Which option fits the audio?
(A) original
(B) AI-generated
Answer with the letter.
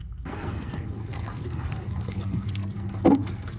B